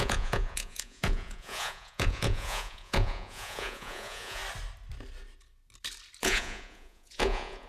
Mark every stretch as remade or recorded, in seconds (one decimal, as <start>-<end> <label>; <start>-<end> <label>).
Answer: 0.0-4.4 remade; 4.4-6.2 recorded; 6.2-7.7 remade